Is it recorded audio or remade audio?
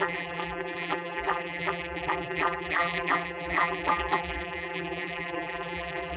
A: remade